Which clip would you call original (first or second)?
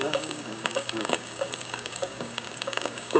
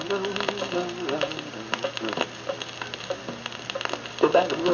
second